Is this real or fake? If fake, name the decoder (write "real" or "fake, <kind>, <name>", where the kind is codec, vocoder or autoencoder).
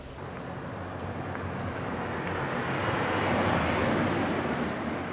real